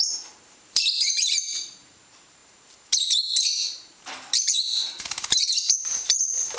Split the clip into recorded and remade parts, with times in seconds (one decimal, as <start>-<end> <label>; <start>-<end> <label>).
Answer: 0.0-1.4 remade; 1.4-1.9 recorded; 1.9-6.6 remade